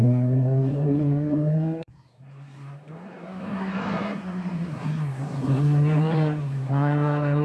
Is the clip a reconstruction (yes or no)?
yes